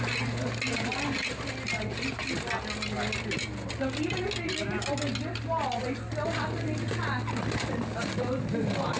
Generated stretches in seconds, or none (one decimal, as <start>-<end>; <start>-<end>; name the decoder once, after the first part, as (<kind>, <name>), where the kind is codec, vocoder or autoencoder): none